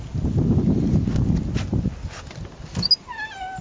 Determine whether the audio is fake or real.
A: real